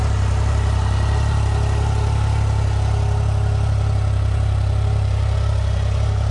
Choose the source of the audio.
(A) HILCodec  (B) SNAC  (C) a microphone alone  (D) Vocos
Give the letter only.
C